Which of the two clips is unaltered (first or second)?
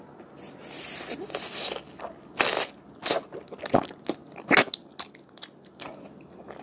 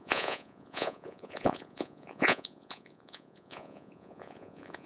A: first